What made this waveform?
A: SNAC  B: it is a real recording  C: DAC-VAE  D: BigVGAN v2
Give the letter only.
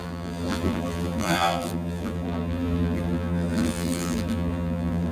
D